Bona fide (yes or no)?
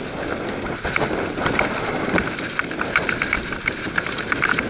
yes